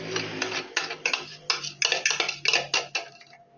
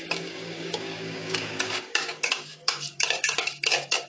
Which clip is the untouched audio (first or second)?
first